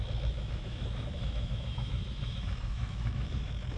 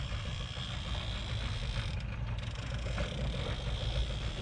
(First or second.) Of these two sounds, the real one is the second